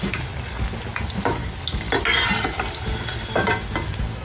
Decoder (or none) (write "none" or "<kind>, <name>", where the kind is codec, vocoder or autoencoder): none